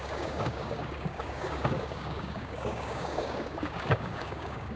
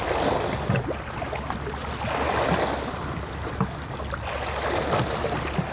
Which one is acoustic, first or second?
second